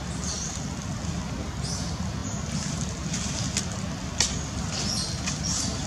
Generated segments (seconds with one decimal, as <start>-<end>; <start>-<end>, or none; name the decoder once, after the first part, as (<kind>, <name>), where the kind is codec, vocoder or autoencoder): none